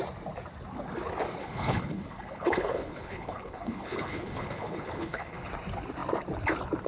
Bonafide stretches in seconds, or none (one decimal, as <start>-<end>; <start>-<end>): 0.0-1.4; 5.5-6.9